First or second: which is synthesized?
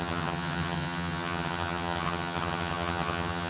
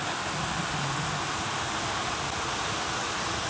first